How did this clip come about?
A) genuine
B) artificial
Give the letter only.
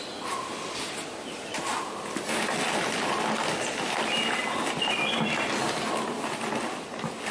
A